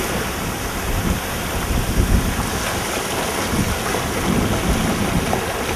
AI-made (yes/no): no